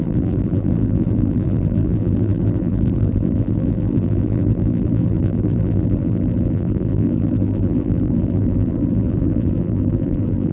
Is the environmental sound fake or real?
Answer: fake